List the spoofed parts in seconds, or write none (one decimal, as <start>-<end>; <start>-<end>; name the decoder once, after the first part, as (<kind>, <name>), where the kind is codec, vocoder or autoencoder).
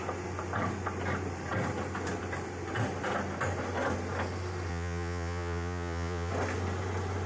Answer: 4.7-6.3 (vocoder, Vocos)